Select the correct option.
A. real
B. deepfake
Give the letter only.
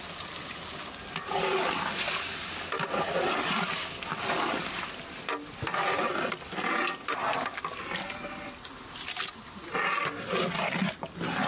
A